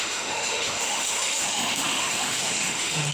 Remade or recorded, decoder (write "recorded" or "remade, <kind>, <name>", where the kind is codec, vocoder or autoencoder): remade, autoencoder, DAC-VAE